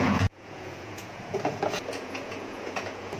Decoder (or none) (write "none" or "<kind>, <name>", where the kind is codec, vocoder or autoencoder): vocoder, Vocos